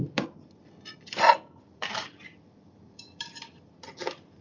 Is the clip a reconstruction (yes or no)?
yes